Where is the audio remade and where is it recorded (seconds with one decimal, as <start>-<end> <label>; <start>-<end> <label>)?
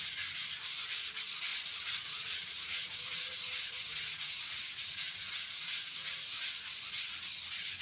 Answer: 0.0-1.5 recorded; 1.5-6.2 remade; 6.2-7.8 recorded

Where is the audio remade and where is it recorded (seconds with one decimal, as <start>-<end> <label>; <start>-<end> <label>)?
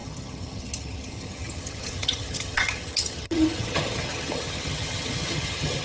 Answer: 0.0-5.8 remade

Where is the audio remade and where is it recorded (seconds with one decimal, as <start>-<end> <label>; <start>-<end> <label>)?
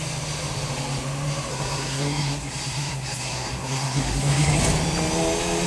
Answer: 0.0-1.5 recorded; 1.5-4.6 remade; 4.6-5.7 recorded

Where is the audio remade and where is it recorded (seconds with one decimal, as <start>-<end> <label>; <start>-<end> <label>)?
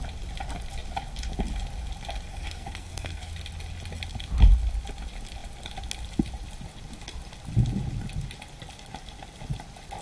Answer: 0.0-2.3 recorded; 2.3-3.3 remade; 3.3-10.0 recorded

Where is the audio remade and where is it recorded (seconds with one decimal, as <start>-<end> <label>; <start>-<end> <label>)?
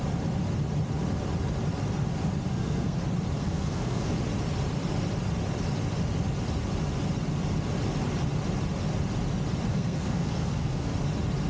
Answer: 0.0-2.5 recorded; 2.5-3.0 remade; 3.0-3.4 recorded; 3.4-4.1 remade; 4.1-9.7 recorded; 9.7-10.9 remade; 10.9-11.5 recorded